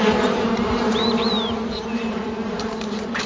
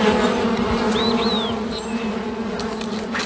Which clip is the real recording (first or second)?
second